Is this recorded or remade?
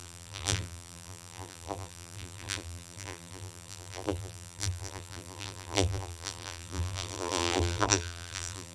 remade